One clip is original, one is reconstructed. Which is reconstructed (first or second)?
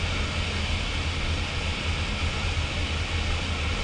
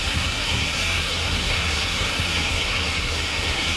second